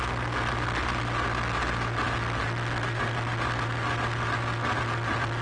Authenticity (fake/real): real